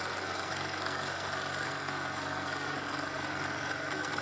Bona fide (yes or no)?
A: no